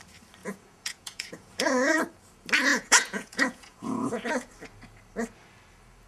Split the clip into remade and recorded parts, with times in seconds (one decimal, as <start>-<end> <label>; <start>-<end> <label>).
0.0-0.4 recorded; 0.4-2.0 remade; 2.0-2.7 recorded; 2.7-4.5 remade; 4.5-6.1 recorded

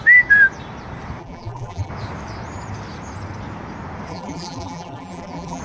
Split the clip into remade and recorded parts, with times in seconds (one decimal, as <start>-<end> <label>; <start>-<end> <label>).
0.0-1.2 recorded; 1.2-1.9 remade; 1.9-4.1 recorded; 4.1-5.6 remade

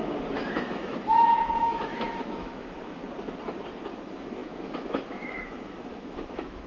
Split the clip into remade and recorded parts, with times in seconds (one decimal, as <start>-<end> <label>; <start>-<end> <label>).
0.0-3.0 remade; 3.0-3.9 recorded; 3.9-6.7 remade

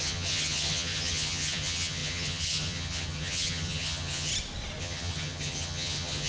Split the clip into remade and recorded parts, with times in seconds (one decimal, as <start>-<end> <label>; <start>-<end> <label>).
0.0-4.3 remade; 4.3-4.8 recorded; 4.8-6.3 remade

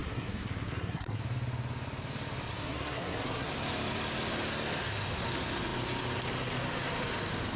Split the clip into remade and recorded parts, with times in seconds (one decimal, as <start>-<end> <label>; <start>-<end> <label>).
0.0-1.2 remade; 1.2-2.5 recorded; 2.5-3.5 remade; 3.5-7.6 recorded

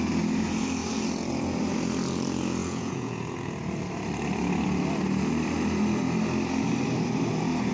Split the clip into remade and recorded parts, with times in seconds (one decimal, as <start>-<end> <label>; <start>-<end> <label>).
0.0-2.6 recorded; 2.6-3.2 remade; 3.2-7.7 recorded

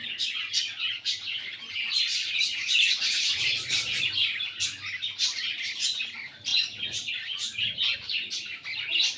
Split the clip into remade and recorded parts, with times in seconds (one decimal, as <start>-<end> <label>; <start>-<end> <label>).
0.0-9.2 recorded

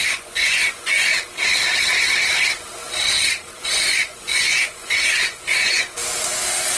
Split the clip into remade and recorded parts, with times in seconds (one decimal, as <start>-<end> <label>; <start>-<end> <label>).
0.0-1.1 remade; 1.1-3.6 recorded; 3.6-6.0 remade; 6.0-6.8 recorded